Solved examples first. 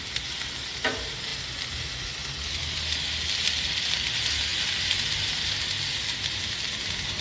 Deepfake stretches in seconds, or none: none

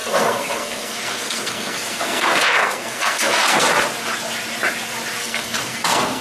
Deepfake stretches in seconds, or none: 0.0-3.7 (codec, SNAC); 5.2-6.2

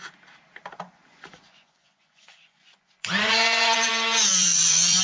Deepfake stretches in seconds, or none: 1.1-3.9 (vocoder, Vocos); 4.3-5.0